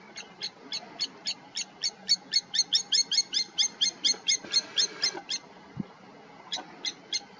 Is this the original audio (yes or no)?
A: yes